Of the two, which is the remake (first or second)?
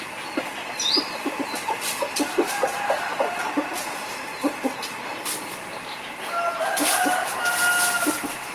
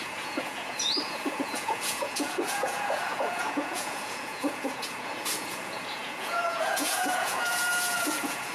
second